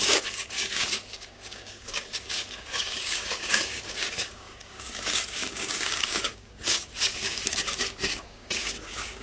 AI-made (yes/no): yes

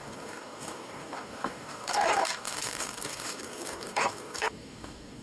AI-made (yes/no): yes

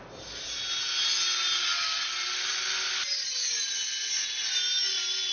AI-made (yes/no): no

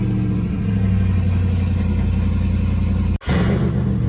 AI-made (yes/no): no